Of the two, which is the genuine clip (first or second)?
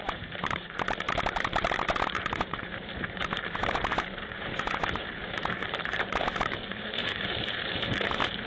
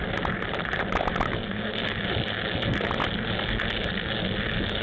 second